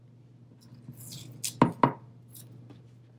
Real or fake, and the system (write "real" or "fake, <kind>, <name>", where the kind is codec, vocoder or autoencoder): real